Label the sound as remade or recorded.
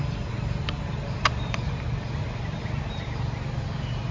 recorded